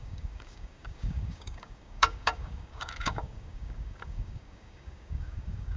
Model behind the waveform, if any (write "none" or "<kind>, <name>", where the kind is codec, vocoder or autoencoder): codec, DAC